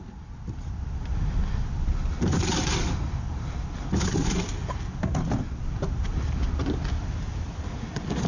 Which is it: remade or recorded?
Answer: recorded